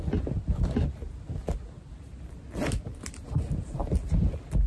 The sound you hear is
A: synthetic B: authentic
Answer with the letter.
B